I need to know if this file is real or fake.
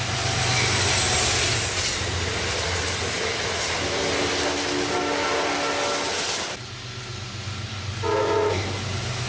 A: real